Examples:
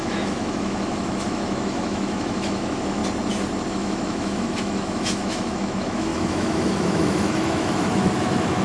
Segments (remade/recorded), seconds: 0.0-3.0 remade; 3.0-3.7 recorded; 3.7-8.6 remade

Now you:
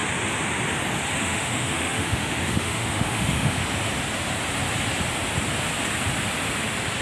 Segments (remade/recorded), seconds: 0.0-1.2 recorded; 1.2-3.6 remade; 3.6-7.0 recorded

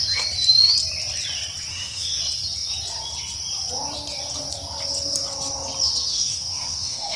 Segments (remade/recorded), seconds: 0.0-1.7 recorded; 1.7-2.2 remade; 2.2-6.1 recorded; 6.1-7.2 remade

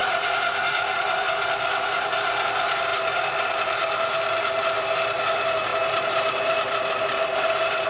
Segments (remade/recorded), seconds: 0.0-7.9 recorded

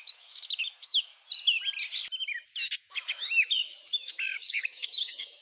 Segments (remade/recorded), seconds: 0.0-1.1 remade; 1.1-2.8 recorded; 2.8-5.4 remade

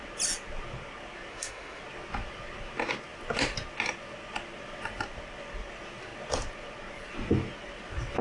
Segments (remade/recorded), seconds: 0.0-1.3 recorded; 1.3-1.8 remade; 1.8-8.2 recorded

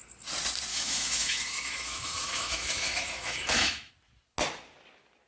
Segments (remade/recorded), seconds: 0.0-0.7 recorded; 0.7-3.9 remade; 3.9-5.3 recorded